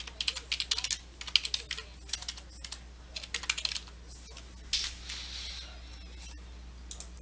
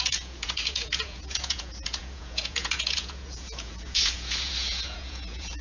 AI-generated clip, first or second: second